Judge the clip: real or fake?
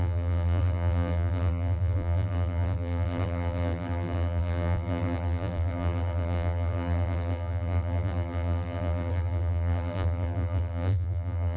fake